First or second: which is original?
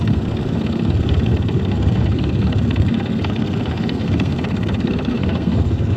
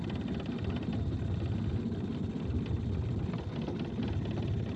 second